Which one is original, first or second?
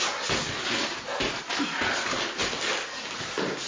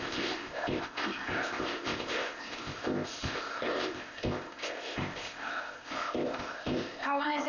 first